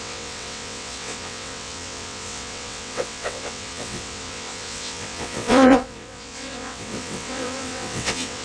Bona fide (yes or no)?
no